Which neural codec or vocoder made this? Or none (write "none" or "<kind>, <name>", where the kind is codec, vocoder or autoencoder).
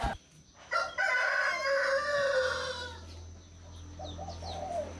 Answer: none